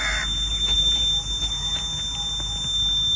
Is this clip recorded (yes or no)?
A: yes